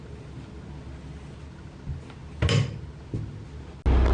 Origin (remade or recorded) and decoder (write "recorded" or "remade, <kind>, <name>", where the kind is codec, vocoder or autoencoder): recorded